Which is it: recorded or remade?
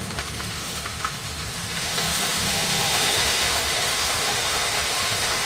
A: remade